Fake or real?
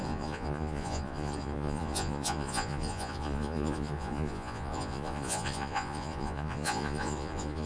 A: fake